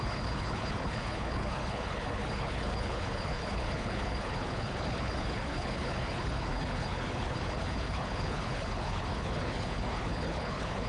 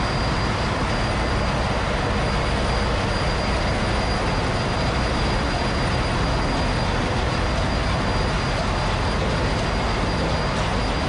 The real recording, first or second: second